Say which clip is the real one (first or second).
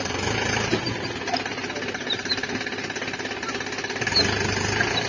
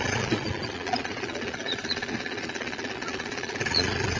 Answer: first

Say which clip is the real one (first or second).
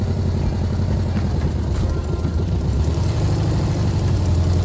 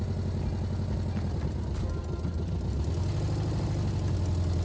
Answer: second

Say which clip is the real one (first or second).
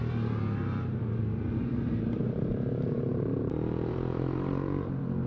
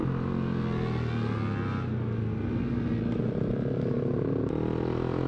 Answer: second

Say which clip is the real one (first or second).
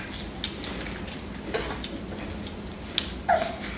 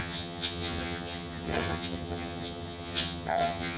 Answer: first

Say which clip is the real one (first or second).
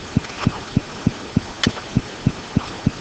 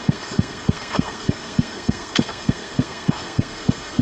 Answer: first